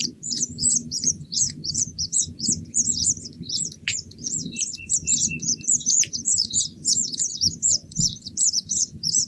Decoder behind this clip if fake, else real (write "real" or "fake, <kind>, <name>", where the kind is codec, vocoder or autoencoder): fake, vocoder, Vocos